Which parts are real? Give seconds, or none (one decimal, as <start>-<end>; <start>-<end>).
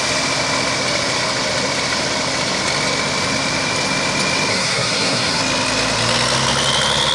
0.0-4.5; 5.4-7.1